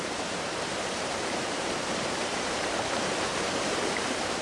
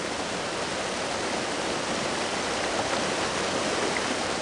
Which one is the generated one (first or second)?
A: first